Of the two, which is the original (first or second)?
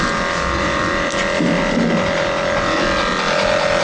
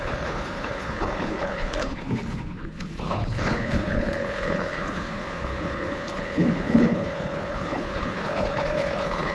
first